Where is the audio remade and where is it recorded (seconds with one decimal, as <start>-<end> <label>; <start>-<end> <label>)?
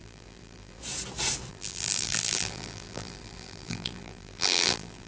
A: 0.0-0.8 remade; 0.8-1.5 recorded; 1.5-5.1 remade